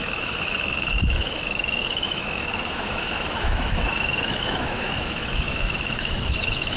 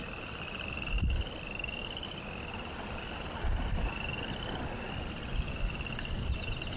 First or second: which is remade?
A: first